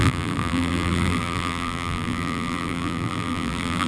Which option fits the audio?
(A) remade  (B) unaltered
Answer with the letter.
A